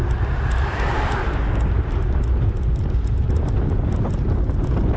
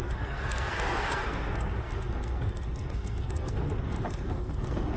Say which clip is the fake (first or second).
second